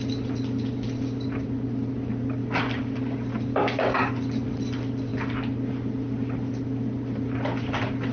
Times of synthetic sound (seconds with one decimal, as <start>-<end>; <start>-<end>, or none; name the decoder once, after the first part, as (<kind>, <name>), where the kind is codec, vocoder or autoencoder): 3.5-4.1 (codec, DAC)